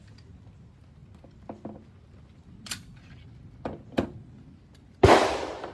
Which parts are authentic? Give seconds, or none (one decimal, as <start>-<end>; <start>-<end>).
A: 0.0-5.7